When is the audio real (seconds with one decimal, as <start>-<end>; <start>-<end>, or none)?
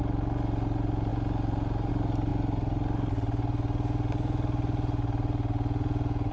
0.0-6.3